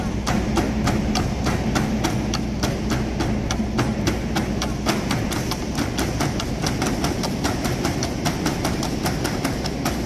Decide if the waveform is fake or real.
real